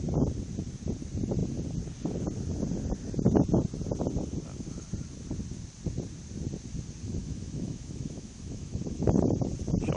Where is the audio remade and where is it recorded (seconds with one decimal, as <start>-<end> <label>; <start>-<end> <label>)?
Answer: 0.0-7.2 recorded; 7.2-9.5 remade; 9.5-10.0 recorded